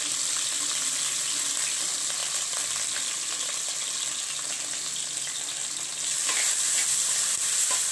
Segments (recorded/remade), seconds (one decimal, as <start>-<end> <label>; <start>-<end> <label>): 0.0-7.9 recorded